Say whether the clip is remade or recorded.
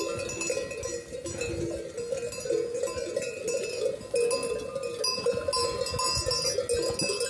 recorded